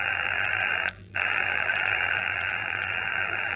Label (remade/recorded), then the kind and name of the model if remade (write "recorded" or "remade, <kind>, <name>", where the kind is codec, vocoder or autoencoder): remade, vocoder, BigVGAN v2